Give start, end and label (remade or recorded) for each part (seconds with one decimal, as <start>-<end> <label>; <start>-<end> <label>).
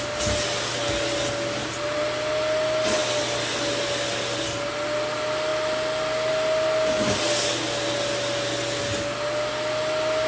0.0-10.3 recorded